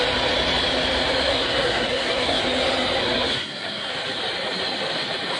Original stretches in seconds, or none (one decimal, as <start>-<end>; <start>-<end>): 0.0-1.3; 2.4-3.0; 3.9-5.4